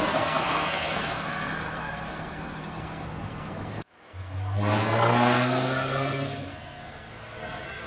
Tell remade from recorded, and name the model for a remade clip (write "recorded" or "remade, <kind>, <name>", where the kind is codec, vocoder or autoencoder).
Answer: remade, codec, SNAC